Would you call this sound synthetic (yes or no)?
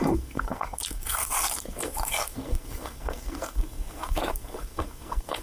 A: yes